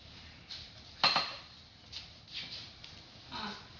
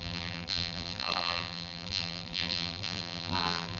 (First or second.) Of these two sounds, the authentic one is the first